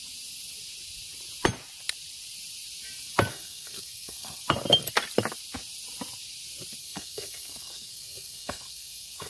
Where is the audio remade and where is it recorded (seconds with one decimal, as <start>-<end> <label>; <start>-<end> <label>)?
0.0-3.3 recorded; 3.3-4.4 remade; 4.4-6.8 recorded; 6.8-9.3 remade